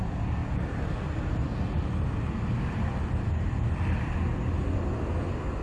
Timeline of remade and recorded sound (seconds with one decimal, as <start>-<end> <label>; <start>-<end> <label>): 0.0-5.6 recorded